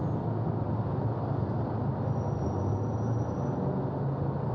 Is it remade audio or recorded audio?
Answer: recorded